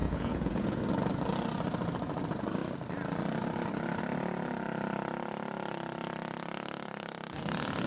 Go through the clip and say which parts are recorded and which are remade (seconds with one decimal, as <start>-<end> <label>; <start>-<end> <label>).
0.0-0.8 remade; 0.8-7.9 recorded